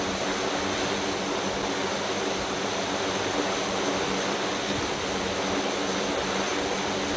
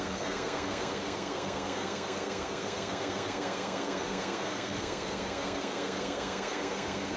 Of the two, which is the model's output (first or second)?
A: second